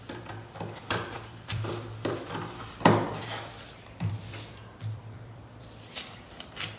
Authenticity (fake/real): fake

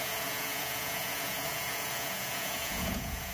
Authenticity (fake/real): fake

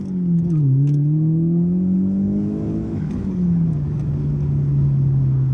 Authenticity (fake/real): fake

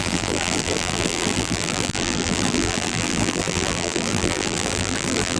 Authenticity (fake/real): fake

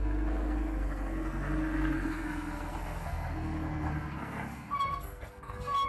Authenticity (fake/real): fake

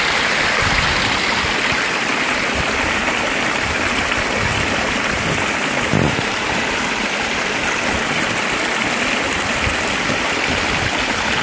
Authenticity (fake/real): real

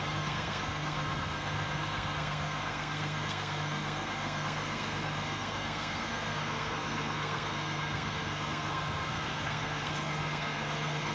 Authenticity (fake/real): fake